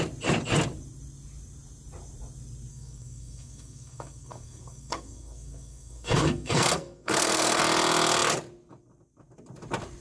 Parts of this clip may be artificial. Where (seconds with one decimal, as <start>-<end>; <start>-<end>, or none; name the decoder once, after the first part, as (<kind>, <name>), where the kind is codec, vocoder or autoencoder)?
2.7-7.6 (codec, SNAC)